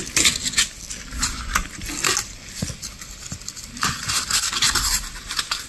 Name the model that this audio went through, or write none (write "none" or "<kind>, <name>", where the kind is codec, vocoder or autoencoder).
none